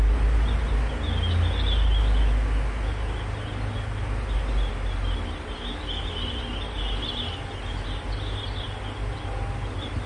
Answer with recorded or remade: recorded